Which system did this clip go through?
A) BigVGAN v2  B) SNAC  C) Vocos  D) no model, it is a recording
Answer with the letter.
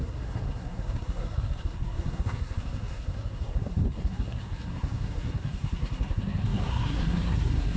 B